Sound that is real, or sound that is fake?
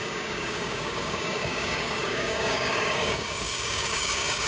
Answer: fake